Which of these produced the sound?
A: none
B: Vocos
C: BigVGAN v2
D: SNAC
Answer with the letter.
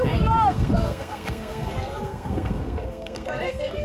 D